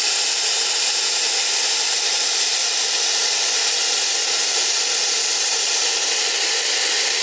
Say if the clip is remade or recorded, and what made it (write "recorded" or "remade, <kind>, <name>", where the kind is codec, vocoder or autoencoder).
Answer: recorded